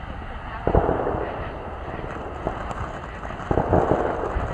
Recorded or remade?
recorded